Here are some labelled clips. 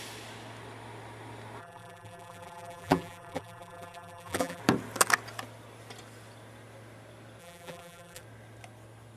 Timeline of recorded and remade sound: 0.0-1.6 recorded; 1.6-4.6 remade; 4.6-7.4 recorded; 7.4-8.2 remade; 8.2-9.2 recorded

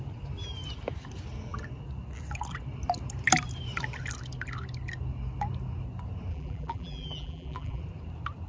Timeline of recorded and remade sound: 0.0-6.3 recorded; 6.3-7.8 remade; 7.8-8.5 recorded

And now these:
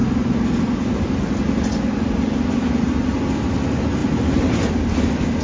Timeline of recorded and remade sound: 0.0-3.2 remade; 3.2-5.4 recorded